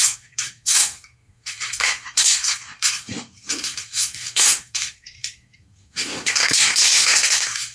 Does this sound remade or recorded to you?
remade